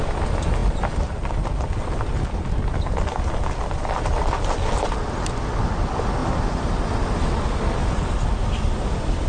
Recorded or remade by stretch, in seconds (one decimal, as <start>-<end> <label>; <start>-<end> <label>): 0.0-9.3 recorded